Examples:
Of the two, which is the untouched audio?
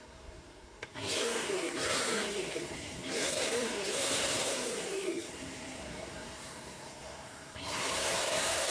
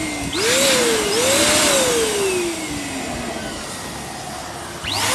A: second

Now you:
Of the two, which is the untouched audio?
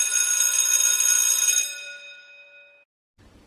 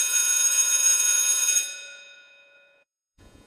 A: first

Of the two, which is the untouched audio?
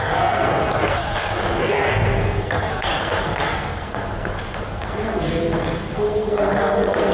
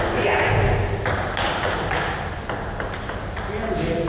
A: second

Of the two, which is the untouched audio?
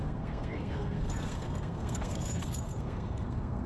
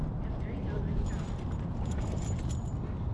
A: second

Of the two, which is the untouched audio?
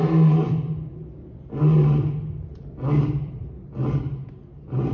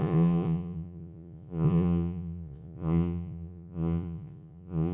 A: first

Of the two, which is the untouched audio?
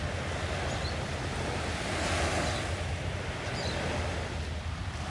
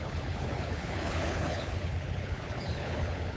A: first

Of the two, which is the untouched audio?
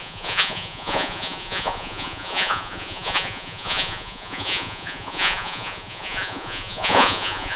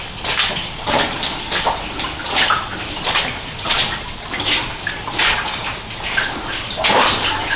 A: second